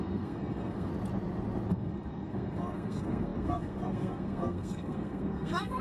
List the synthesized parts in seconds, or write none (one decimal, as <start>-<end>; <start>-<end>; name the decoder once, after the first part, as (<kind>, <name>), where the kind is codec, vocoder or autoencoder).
0.0-0.9 (codec, SNAC); 1.7-5.8